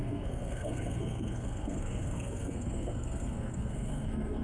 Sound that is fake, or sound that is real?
fake